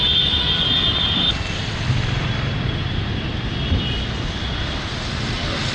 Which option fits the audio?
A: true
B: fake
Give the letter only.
B